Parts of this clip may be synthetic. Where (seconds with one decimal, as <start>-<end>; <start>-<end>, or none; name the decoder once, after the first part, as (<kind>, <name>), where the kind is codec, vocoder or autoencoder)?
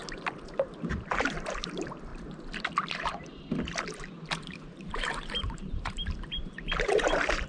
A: 0.0-2.1 (vocoder, BigVGAN v2); 4.0-7.5